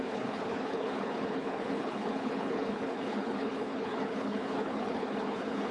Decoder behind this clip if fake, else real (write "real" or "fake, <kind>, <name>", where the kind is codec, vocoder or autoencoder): fake, codec, HILCodec